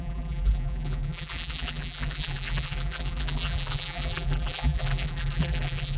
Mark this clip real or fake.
fake